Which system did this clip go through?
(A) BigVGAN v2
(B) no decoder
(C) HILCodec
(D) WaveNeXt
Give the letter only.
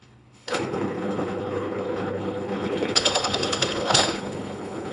C